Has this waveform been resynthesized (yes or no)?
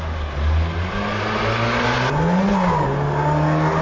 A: no